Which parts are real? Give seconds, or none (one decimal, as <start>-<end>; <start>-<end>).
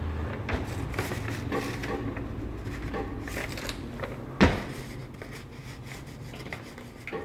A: 0.0-7.2